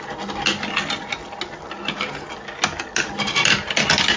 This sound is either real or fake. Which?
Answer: real